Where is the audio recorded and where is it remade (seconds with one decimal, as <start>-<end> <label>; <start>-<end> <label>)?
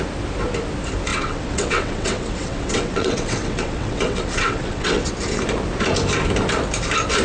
0.0-1.1 recorded; 1.1-5.1 remade; 5.1-7.2 recorded